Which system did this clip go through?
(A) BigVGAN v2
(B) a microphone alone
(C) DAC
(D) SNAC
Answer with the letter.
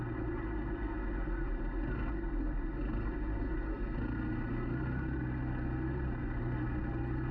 B